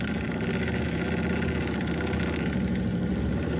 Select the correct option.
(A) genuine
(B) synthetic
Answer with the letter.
A